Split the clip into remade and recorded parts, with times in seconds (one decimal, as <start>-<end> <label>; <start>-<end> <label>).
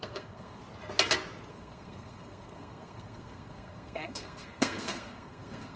0.0-0.6 remade; 0.6-1.5 recorded; 1.5-5.8 remade